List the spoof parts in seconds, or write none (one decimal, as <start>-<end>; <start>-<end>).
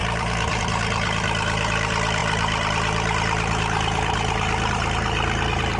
0.0-5.8